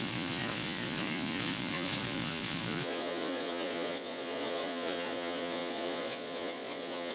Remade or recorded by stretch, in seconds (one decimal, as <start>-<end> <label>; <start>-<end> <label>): 0.0-7.1 remade